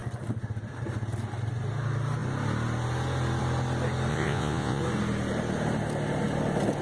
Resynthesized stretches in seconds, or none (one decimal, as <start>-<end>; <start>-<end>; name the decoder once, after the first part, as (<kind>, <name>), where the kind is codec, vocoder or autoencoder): 4.1-4.8 (vocoder, Vocos)